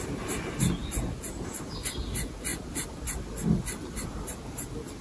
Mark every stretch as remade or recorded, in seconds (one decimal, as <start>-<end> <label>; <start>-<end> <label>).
0.0-5.0 recorded